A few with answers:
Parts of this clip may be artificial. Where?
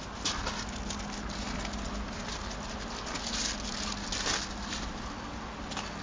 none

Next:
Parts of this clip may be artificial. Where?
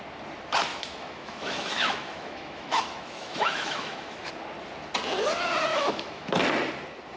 0.7-4.3; 5.7-6.3